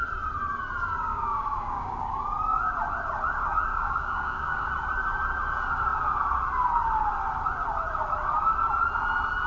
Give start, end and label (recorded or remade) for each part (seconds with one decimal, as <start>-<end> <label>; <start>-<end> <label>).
0.0-1.1 recorded; 1.1-2.2 remade; 2.2-3.7 recorded; 3.7-4.7 remade; 4.7-9.5 recorded